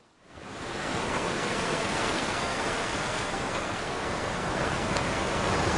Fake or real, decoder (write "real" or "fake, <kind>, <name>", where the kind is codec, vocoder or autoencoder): fake, codec, SNAC